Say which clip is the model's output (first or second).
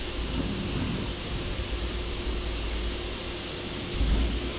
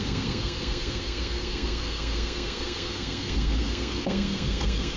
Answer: second